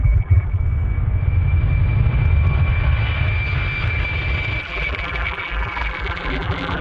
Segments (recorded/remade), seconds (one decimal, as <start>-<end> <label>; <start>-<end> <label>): 0.0-0.6 remade; 0.6-4.6 recorded; 4.6-6.8 remade